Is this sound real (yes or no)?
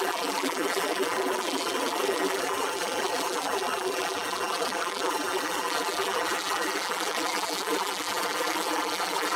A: no